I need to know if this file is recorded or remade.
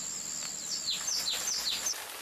recorded